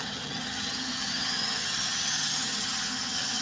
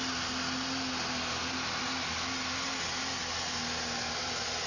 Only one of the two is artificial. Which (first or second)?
first